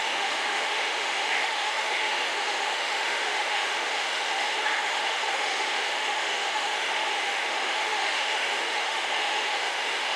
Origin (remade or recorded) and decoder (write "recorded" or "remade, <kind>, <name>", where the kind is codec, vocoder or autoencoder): remade, autoencoder, DAC-VAE